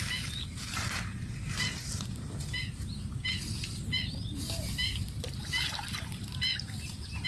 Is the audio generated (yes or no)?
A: yes